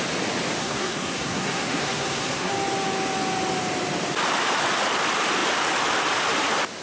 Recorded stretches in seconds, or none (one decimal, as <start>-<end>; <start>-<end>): 0.0-0.6; 2.5-6.8